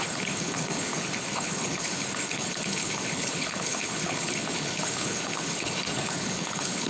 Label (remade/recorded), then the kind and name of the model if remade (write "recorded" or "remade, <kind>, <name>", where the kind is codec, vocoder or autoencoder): remade, codec, HILCodec